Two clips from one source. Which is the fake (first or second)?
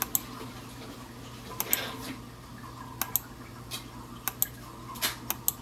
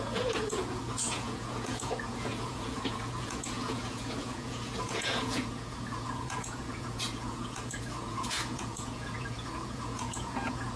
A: second